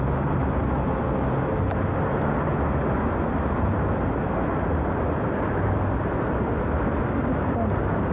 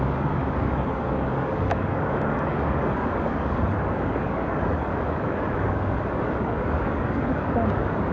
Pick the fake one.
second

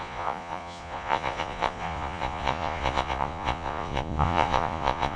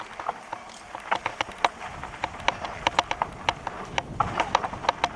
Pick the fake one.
first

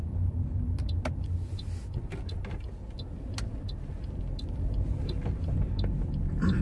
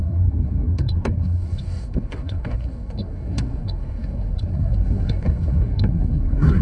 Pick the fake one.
second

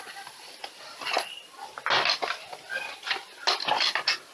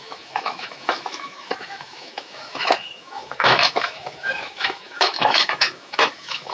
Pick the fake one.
second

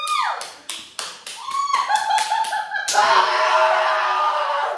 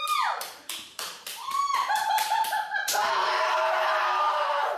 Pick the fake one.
second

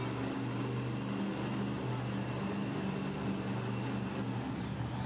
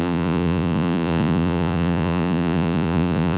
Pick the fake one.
second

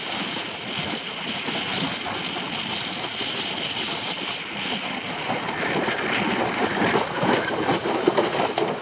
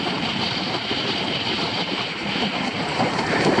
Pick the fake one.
second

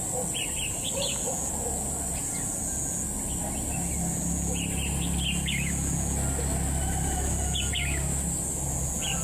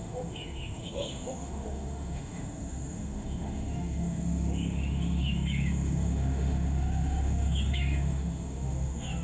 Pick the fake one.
second